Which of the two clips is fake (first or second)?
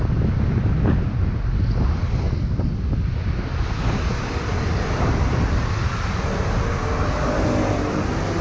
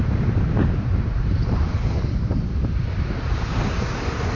second